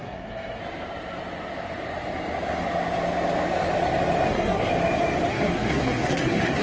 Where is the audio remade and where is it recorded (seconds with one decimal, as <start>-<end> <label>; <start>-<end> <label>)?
0.0-0.6 remade; 0.6-4.3 recorded; 4.3-4.7 remade; 4.7-5.3 recorded; 5.3-6.6 remade